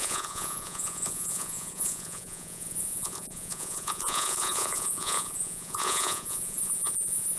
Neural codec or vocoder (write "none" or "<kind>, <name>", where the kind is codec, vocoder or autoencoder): vocoder, Vocos